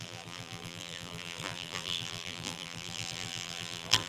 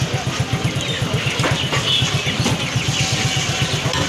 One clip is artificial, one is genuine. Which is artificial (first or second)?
first